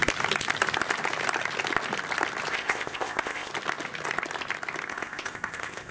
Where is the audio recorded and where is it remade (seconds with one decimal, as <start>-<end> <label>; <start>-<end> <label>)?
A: 0.0-2.5 recorded; 2.5-3.5 remade; 3.5-4.9 recorded; 4.9-5.9 remade